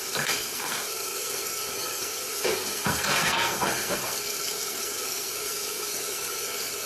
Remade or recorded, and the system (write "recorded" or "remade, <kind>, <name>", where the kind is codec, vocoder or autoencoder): remade, codec, SNAC